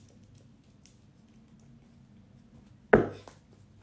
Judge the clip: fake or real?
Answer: real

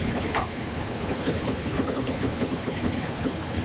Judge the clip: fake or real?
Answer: fake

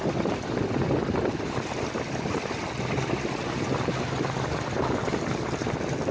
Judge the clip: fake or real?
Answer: real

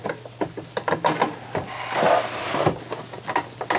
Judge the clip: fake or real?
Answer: real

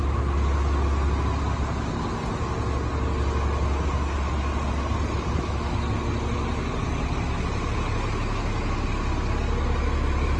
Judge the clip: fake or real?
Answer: real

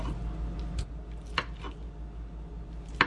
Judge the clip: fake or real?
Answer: real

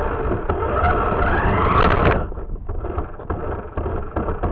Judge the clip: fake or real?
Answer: real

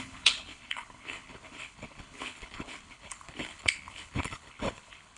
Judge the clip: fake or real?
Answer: fake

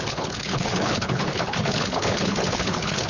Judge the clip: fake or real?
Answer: fake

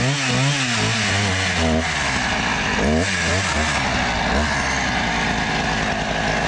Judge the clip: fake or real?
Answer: real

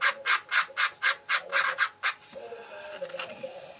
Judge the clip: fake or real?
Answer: real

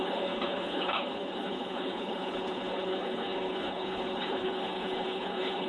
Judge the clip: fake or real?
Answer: fake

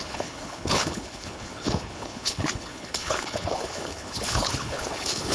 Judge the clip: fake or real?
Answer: fake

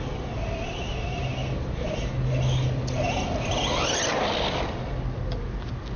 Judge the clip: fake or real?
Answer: real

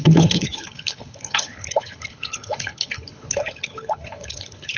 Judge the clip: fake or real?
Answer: fake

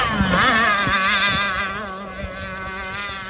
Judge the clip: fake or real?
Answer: real